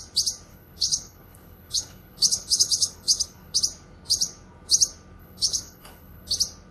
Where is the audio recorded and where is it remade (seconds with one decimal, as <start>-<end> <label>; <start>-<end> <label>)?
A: 0.0-0.5 recorded; 0.5-3.6 remade; 3.6-5.2 recorded; 5.2-6.3 remade; 6.3-6.7 recorded